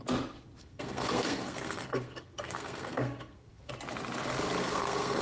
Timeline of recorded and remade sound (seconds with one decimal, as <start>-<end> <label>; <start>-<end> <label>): 0.0-0.6 recorded; 0.6-3.7 remade; 3.7-4.6 recorded; 4.6-5.2 remade